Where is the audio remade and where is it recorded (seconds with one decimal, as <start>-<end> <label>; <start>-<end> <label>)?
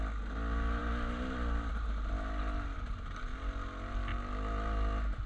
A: 0.0-5.3 recorded